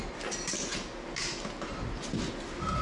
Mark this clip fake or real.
real